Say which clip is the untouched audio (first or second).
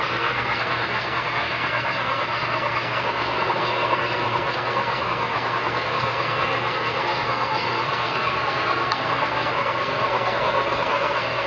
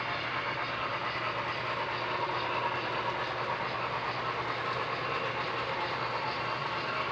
second